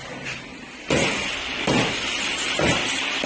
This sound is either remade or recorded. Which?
recorded